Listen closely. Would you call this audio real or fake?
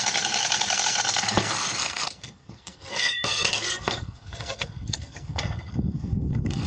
fake